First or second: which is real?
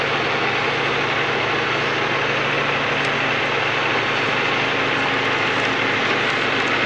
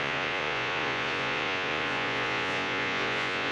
first